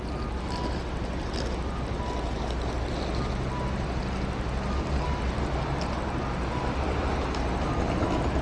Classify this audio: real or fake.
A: real